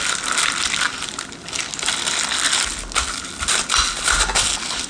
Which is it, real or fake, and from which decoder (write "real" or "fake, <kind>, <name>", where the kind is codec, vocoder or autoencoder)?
real